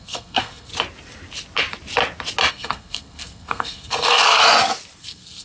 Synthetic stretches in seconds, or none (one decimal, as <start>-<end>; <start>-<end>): 0.0-0.7; 2.5-4.4; 5.0-5.4